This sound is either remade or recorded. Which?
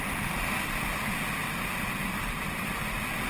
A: remade